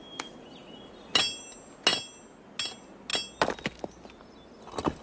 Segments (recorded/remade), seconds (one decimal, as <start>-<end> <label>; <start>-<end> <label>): 0.0-5.0 recorded